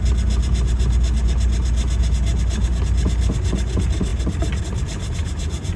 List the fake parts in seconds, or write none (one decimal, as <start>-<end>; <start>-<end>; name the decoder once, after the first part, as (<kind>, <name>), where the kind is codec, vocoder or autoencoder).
none